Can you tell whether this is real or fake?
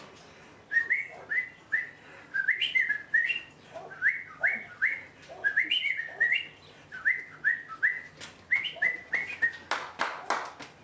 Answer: real